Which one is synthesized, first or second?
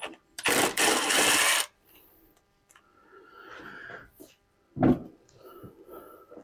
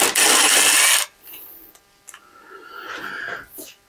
first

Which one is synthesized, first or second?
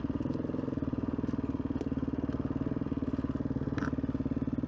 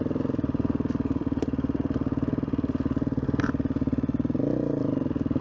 second